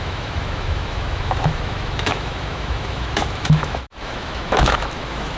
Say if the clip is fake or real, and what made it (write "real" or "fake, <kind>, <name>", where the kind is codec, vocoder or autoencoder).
fake, autoencoder, DAC-VAE